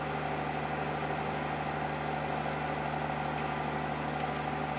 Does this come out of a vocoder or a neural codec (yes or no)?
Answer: no